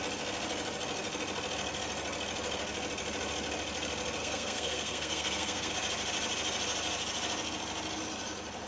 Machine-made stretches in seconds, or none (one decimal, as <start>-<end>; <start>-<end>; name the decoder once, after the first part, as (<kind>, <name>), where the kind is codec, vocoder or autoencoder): 4.2-5.7 (codec, SNAC)